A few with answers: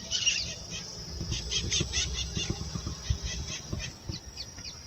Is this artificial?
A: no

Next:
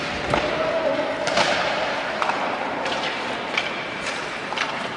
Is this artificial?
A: yes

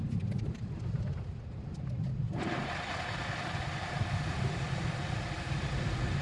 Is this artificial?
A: no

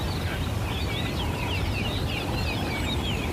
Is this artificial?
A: no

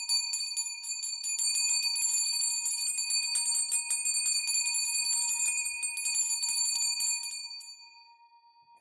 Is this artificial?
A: no